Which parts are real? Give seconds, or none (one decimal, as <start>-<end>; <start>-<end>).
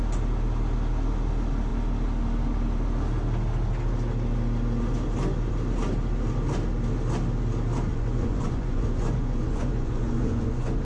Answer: 0.0-7.9